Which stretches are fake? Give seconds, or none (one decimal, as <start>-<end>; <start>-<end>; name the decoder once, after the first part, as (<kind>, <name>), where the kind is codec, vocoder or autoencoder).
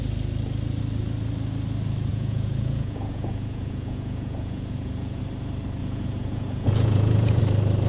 2.1-5.2 (vocoder, Vocos); 5.8-7.4